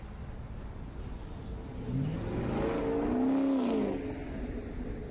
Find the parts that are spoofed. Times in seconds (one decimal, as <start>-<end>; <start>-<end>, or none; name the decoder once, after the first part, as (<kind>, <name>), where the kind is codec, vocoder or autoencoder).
none